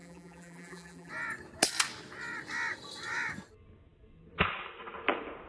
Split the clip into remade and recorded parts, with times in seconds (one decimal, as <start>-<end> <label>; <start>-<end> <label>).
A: 0.0-1.1 remade; 1.1-5.5 recorded